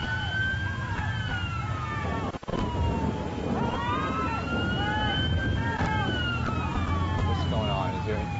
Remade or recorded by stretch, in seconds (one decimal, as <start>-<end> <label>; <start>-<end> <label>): 0.0-8.4 recorded